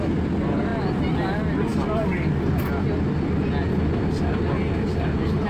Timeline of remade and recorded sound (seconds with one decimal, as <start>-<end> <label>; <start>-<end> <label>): 0.0-5.5 recorded